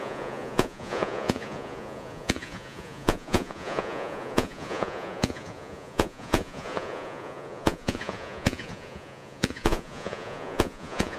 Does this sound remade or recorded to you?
remade